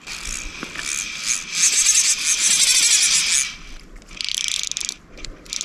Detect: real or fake real